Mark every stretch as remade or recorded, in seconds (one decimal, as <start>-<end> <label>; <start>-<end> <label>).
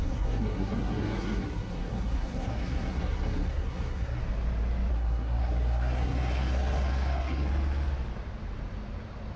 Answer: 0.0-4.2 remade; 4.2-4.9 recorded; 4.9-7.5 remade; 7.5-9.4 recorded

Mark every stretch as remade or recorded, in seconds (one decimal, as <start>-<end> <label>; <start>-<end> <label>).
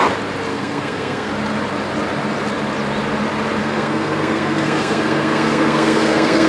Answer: 0.0-0.5 recorded; 0.5-1.3 remade; 1.3-3.6 recorded; 3.6-6.5 remade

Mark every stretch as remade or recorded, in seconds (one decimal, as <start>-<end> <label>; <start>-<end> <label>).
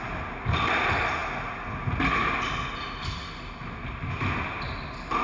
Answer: 0.0-5.2 recorded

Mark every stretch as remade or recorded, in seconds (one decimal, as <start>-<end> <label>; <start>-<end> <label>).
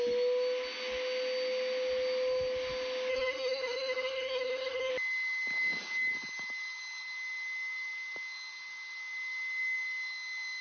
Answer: 0.0-3.1 recorded; 3.1-4.9 remade; 4.9-10.6 recorded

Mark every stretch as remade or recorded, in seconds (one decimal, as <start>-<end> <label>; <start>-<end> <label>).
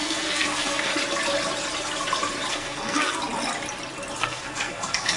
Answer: 0.0-0.9 remade; 0.9-2.5 recorded; 2.5-3.2 remade; 3.2-4.2 recorded; 4.2-5.2 remade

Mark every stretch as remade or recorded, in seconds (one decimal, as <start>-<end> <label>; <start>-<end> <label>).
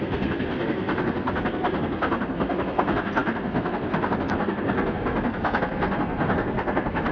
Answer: 0.0-7.1 remade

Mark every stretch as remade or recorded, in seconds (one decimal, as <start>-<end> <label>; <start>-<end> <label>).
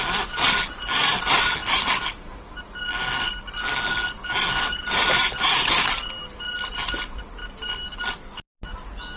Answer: 0.0-9.2 recorded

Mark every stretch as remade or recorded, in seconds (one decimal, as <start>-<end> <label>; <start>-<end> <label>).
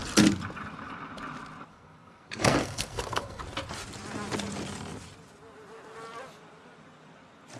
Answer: 0.0-1.7 recorded; 1.7-3.4 remade; 3.4-7.6 recorded